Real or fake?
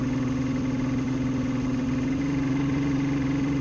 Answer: real